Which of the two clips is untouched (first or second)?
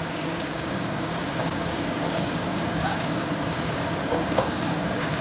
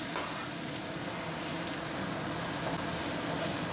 second